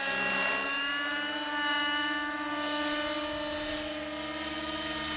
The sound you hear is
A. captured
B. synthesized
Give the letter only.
A